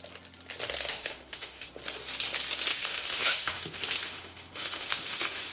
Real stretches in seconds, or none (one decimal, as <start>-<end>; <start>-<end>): 0.0-0.9; 1.7-2.7